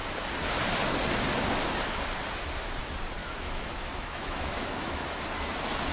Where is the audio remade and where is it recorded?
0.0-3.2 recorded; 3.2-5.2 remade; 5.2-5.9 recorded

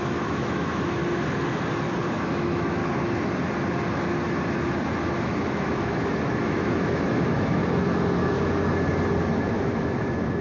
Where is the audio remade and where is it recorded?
0.0-1.0 remade; 1.0-2.1 recorded; 2.1-2.8 remade; 2.8-5.2 recorded; 5.2-7.6 remade; 7.6-9.2 recorded; 9.2-10.4 remade

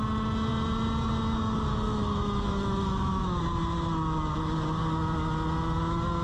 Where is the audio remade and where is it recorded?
0.0-1.7 recorded; 1.7-3.4 remade; 3.4-6.2 recorded

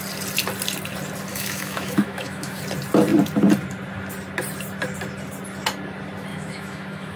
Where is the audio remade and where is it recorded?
0.0-1.3 recorded; 1.3-2.6 remade; 2.6-6.3 recorded; 6.3-7.2 remade

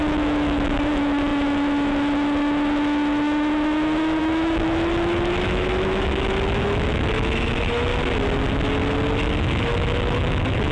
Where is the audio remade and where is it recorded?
0.0-7.9 remade; 7.9-9.4 recorded; 9.4-10.7 remade

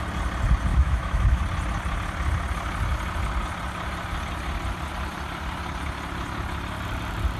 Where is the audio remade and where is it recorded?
0.0-0.7 recorded; 0.7-1.4 remade; 1.4-7.4 recorded

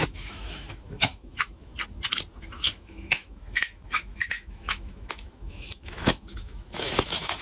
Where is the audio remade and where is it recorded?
0.0-1.7 remade; 1.7-2.4 recorded; 2.4-7.4 remade